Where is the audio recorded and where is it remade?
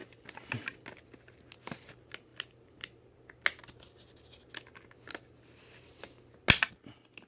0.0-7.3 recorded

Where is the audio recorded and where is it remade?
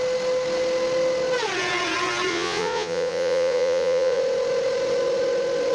0.0-2.3 recorded; 2.3-4.2 remade; 4.2-5.7 recorded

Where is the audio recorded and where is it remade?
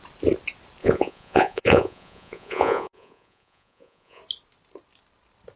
0.0-0.8 recorded; 0.8-4.2 remade; 4.2-5.6 recorded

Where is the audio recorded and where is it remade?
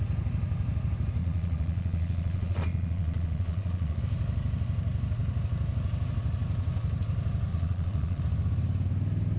0.0-1.2 recorded; 1.2-4.0 remade; 4.0-7.5 recorded; 7.5-8.2 remade; 8.2-9.4 recorded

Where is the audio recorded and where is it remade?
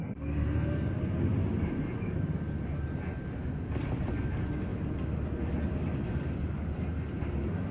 0.0-7.7 recorded